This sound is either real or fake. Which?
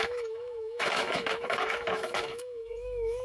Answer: fake